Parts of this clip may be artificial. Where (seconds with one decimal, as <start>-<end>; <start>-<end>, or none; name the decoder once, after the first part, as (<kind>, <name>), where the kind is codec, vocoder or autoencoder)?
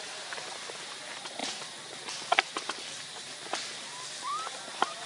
none